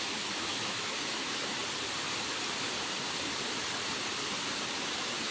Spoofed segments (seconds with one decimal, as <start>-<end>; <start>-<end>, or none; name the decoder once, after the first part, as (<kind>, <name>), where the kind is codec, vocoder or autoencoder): 0.0-1.6 (autoencoder, DAC-VAE); 4.8-5.3